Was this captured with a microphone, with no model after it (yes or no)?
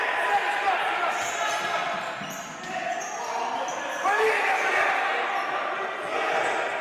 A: yes